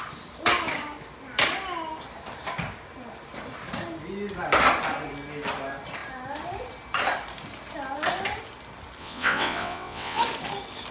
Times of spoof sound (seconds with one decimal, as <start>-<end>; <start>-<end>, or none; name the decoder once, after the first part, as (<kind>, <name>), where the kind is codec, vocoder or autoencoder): 9.0-10.2 (vocoder, WaveNeXt)